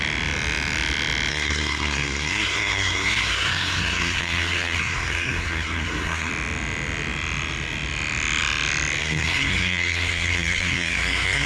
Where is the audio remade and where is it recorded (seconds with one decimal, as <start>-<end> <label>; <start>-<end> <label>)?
0.0-1.3 recorded; 1.3-6.3 remade; 6.3-9.0 recorded; 9.0-11.5 remade